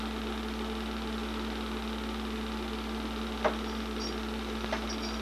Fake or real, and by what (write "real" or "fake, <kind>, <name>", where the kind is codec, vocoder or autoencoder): real